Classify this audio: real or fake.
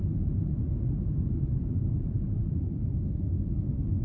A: real